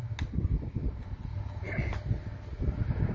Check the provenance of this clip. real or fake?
real